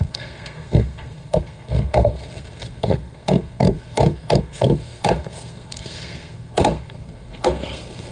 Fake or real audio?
fake